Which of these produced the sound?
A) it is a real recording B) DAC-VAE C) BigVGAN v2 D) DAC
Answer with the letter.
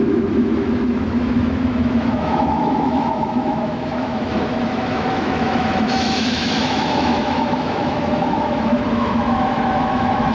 B